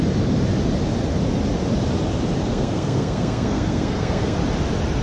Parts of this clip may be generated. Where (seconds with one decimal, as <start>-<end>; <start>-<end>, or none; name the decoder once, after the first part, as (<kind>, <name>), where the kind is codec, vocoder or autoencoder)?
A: 2.4-4.4 (codec, SNAC)